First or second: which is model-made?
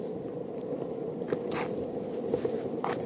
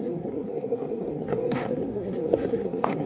second